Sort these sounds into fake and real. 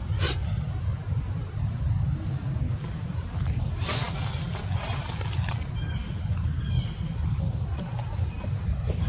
real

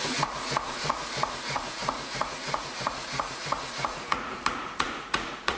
fake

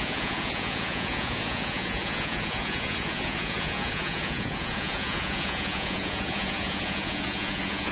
fake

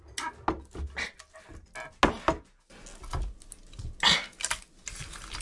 real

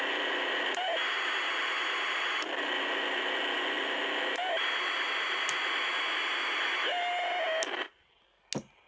real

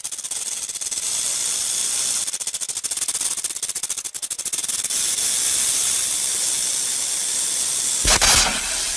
real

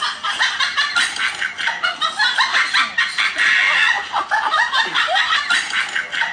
real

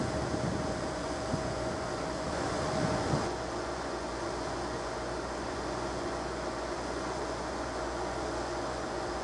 fake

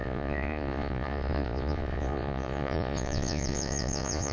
fake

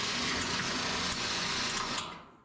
fake